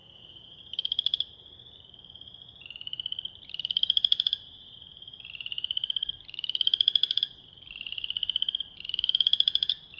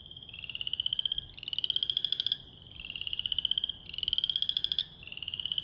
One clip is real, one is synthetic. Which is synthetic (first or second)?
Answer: first